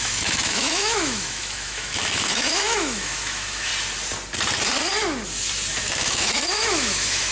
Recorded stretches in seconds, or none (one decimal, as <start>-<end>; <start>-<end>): 3.7-5.8

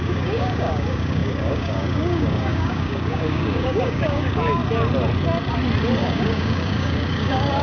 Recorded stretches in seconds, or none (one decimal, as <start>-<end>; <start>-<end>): 4.6-6.0

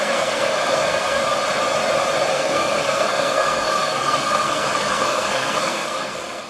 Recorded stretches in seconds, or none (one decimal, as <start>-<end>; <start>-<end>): 1.2-2.3

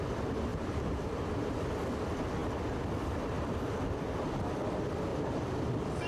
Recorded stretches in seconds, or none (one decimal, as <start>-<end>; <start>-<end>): 0.0-0.5; 1.7-5.1